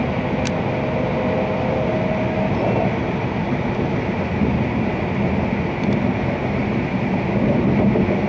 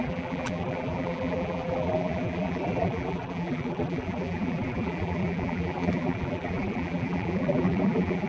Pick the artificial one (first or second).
second